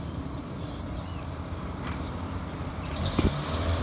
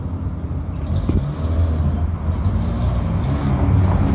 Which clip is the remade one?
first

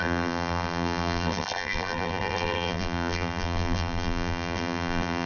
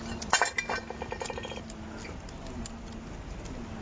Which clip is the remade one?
first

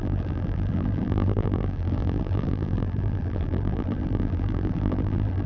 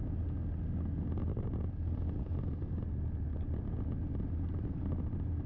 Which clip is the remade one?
first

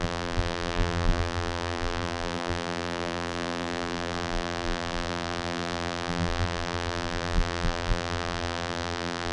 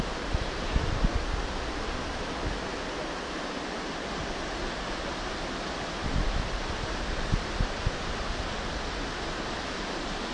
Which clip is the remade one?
first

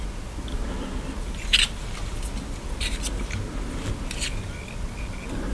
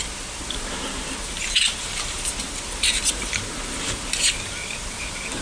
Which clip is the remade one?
second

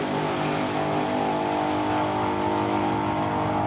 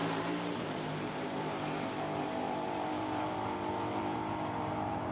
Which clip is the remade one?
second